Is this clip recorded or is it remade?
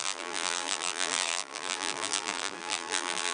remade